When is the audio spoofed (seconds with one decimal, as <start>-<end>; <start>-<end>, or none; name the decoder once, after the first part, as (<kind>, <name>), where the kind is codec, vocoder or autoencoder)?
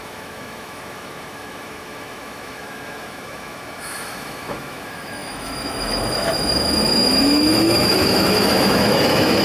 0.0-9.4 (autoencoder, DAC-VAE)